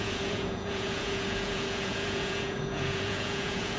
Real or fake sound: fake